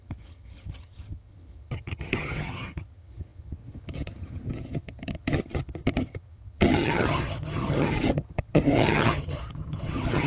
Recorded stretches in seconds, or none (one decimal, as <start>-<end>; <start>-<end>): none

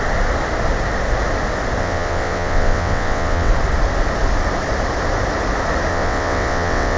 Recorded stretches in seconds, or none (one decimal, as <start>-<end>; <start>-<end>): 0.0-1.8; 3.5-5.9